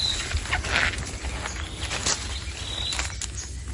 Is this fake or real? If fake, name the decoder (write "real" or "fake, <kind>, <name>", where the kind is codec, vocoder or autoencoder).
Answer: real